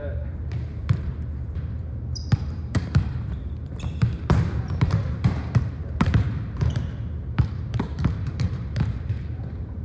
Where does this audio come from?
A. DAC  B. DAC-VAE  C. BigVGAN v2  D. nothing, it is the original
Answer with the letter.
C